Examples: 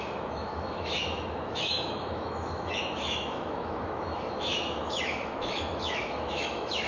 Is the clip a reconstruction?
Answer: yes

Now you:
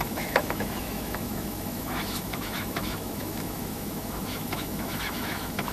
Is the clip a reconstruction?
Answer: yes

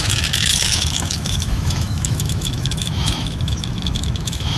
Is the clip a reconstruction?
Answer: yes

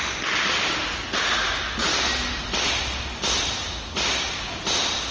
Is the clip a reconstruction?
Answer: no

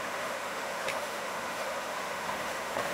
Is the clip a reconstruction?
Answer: yes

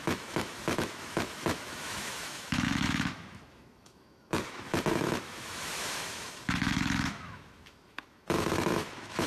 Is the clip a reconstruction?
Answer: yes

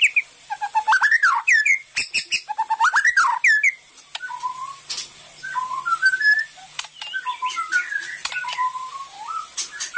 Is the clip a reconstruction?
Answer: no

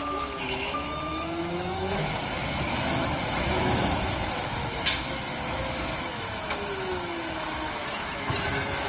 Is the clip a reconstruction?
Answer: yes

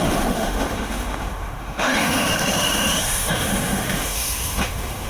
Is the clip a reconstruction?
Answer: yes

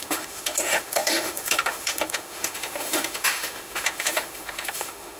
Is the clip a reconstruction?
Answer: yes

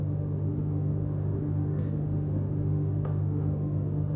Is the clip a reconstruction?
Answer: yes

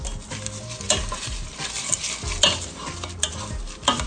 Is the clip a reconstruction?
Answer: no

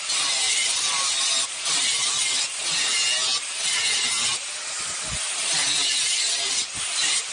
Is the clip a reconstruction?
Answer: no